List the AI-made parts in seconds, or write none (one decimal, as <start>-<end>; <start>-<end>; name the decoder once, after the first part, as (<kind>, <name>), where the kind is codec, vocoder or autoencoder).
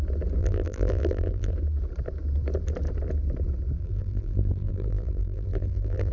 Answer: 0.4-1.5 (vocoder, BigVGAN v2); 3.8-6.1